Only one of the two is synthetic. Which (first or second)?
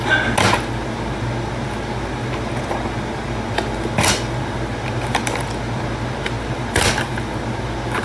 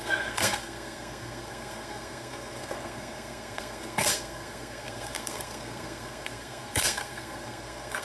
second